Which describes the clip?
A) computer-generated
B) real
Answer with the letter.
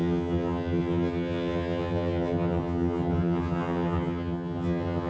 A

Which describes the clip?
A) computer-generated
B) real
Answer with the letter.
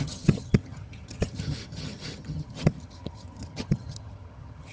A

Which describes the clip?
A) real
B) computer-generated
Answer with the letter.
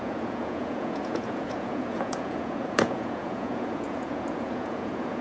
B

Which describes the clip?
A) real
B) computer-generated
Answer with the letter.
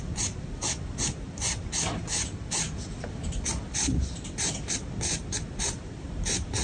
A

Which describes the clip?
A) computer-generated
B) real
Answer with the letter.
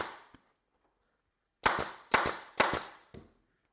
B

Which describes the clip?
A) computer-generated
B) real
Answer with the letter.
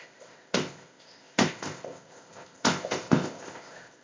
A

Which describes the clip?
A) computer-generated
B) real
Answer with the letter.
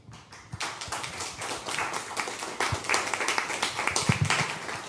B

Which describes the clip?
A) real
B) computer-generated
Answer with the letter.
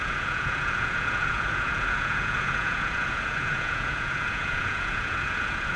B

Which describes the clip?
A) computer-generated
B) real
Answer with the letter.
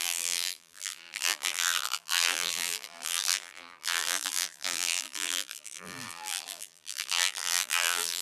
A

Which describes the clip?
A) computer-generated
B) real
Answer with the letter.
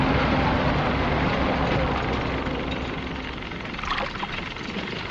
B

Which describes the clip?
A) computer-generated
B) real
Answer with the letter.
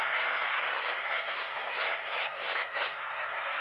A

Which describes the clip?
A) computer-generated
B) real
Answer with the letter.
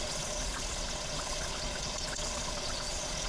A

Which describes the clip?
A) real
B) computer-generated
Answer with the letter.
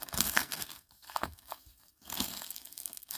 B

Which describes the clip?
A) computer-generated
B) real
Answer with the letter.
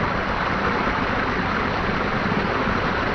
B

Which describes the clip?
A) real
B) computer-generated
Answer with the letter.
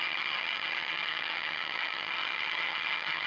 B